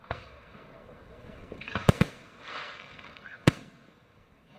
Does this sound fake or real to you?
fake